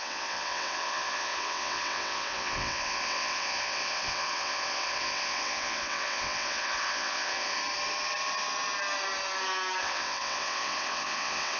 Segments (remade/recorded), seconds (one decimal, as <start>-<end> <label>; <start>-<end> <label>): 0.0-7.6 remade; 7.6-9.8 recorded; 9.8-11.6 remade